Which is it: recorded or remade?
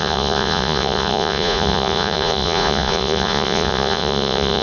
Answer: remade